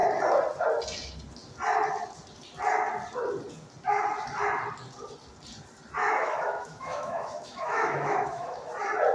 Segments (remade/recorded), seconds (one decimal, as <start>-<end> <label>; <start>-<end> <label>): 0.0-6.0 recorded; 6.0-8.7 remade; 8.7-9.1 recorded

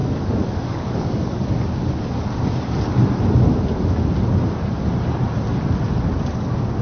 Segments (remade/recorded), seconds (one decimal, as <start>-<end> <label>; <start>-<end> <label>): 0.0-1.5 remade; 1.5-6.8 recorded

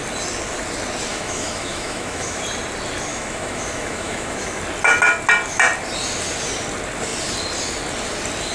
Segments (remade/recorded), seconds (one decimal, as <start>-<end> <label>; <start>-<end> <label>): 0.0-1.1 recorded; 1.1-2.4 remade; 2.4-3.1 recorded; 3.1-4.6 remade; 4.6-8.5 recorded

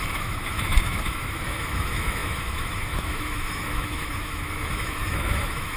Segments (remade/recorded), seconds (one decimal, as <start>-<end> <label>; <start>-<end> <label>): 0.0-5.8 remade

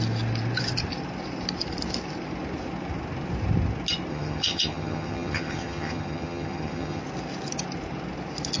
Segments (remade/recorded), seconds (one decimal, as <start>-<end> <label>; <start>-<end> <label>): 0.0-4.1 recorded; 4.1-7.0 remade; 7.0-8.6 recorded

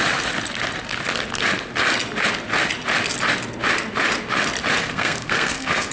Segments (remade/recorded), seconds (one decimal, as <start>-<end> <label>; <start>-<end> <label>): 0.0-4.8 recorded; 4.8-5.9 remade

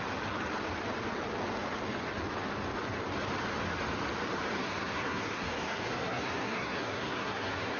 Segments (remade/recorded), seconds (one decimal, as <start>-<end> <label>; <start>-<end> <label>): 0.0-4.6 recorded; 4.6-7.8 remade

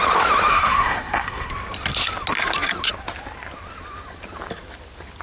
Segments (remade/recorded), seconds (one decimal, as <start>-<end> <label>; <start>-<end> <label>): 0.0-0.5 recorded; 0.5-1.5 remade; 1.5-5.2 recorded